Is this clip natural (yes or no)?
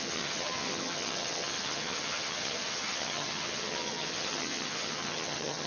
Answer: no